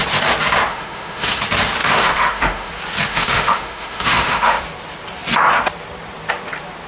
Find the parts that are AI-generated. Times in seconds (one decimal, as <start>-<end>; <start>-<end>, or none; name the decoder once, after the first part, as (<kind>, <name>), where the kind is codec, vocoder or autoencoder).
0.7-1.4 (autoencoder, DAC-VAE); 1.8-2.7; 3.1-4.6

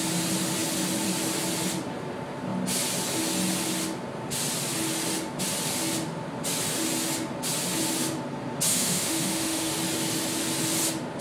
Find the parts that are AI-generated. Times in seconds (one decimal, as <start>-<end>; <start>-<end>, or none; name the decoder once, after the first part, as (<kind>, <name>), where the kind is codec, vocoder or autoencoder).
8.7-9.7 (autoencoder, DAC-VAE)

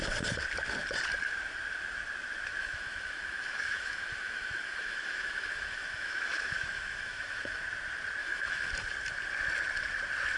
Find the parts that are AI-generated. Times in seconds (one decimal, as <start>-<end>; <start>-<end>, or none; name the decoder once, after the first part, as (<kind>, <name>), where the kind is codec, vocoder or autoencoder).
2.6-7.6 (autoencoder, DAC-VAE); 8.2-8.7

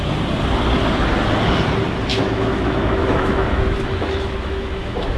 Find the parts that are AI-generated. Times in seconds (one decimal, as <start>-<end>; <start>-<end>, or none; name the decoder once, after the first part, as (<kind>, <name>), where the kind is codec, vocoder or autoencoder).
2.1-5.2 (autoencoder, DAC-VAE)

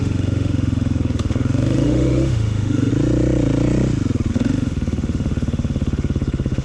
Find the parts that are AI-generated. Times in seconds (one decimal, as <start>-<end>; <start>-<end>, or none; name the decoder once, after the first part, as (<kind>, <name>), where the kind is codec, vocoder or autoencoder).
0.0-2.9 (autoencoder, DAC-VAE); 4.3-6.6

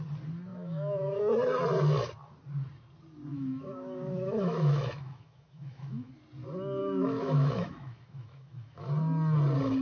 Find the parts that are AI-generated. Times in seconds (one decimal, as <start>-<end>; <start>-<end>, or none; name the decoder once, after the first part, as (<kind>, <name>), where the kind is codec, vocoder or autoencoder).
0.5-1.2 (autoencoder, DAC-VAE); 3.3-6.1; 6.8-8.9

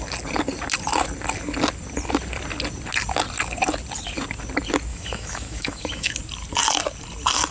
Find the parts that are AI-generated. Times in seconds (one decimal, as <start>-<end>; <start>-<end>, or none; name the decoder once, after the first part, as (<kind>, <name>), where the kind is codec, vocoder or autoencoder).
4.9-6.2 (autoencoder, DAC-VAE)